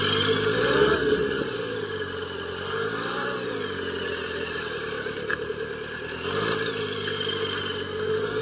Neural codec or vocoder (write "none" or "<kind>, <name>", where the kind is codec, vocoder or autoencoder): none